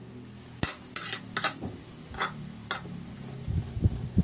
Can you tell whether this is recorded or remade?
recorded